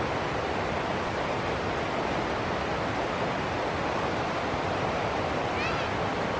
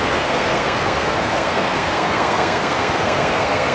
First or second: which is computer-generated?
second